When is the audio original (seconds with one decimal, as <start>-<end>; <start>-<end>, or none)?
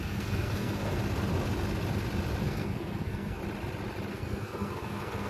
1.0-2.4; 3.4-4.1